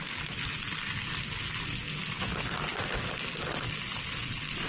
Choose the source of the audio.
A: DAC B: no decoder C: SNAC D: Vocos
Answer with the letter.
B